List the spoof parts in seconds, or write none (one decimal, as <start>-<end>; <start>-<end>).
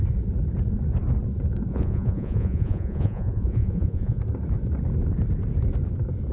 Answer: 1.7-4.2